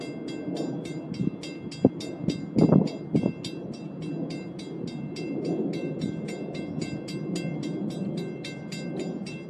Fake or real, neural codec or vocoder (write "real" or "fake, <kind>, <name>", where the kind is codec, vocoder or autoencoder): real